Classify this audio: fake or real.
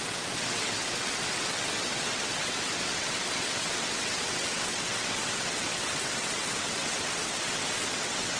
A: fake